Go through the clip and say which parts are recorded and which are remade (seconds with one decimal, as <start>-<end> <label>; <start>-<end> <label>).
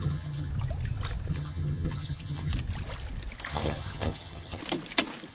0.0-0.5 remade; 0.5-1.3 recorded; 1.3-2.5 remade; 2.5-3.5 recorded; 3.5-4.6 remade; 4.6-5.3 recorded